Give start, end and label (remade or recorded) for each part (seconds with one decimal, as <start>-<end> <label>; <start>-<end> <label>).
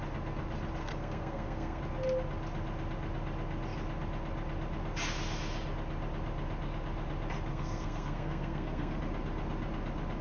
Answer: 0.0-0.8 recorded; 0.8-1.8 remade; 1.8-7.5 recorded; 7.5-9.0 remade; 9.0-10.2 recorded